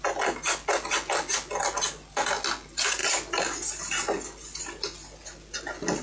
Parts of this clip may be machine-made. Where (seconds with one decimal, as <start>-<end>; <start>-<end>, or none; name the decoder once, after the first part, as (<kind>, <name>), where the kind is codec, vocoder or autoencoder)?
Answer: none